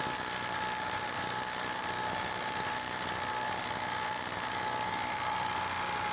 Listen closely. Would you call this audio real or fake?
real